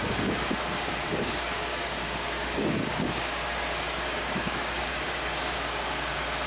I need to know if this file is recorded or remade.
remade